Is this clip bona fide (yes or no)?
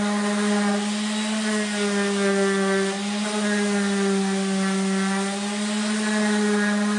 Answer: yes